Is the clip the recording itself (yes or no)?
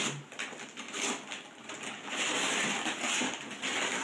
yes